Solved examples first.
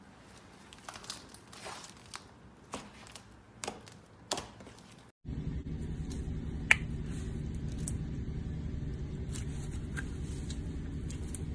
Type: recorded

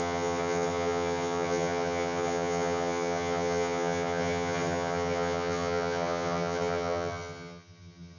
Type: remade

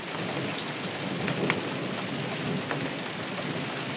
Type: recorded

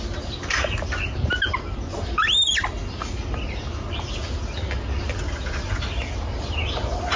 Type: recorded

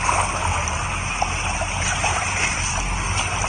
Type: recorded